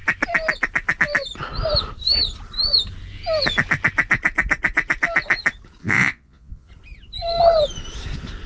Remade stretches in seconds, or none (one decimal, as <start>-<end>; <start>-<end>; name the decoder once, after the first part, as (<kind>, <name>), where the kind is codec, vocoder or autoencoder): 5.8-6.7 (vocoder, Vocos)